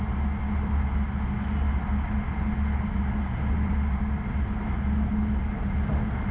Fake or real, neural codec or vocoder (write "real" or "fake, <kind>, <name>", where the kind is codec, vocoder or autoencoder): real